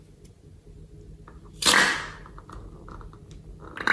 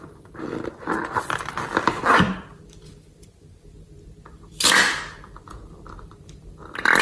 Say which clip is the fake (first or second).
second